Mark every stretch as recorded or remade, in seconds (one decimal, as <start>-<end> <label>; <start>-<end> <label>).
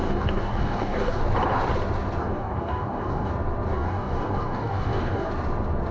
0.0-1.2 remade; 1.2-2.2 recorded; 2.2-3.3 remade; 3.3-3.7 recorded; 3.7-5.3 remade; 5.3-5.9 recorded